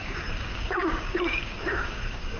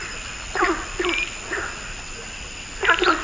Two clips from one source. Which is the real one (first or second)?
second